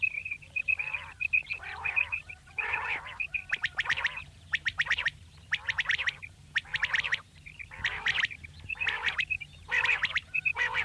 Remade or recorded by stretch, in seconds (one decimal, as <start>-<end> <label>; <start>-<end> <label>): 0.0-10.8 remade